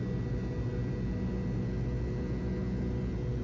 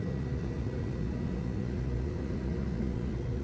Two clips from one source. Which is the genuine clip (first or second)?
first